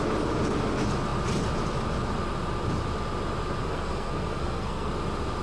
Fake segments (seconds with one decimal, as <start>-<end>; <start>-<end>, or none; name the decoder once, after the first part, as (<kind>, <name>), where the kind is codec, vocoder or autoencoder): 3.6-4.9 (codec, SNAC)